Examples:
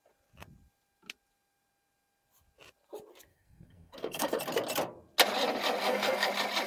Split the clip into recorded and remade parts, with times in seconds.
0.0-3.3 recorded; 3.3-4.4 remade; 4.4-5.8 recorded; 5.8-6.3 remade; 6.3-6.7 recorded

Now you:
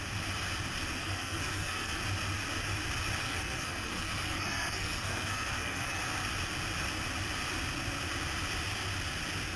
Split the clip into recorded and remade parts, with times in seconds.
0.0-1.0 recorded; 1.0-2.0 remade; 2.0-3.2 recorded; 3.2-6.0 remade; 6.0-9.6 recorded

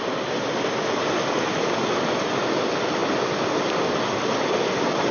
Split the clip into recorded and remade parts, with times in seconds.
0.0-5.1 recorded

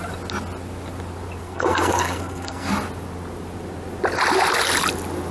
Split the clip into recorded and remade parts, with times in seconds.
0.0-1.4 recorded; 1.4-2.7 remade; 2.7-5.3 recorded

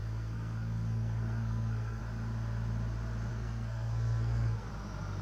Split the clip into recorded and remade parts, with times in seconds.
0.0-2.0 remade; 2.0-3.3 recorded; 3.3-4.7 remade; 4.7-5.2 recorded

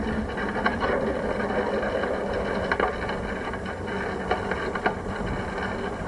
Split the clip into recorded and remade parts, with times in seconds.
0.0-6.1 recorded